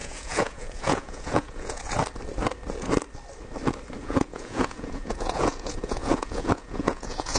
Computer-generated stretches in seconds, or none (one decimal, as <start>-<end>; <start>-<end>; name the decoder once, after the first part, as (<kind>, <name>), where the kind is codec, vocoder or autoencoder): 0.0-1.9 (vocoder, Vocos); 4.0-7.4